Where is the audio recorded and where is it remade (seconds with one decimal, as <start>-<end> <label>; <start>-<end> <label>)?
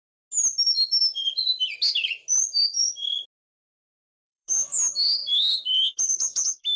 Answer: 0.0-3.7 recorded; 3.7-6.8 remade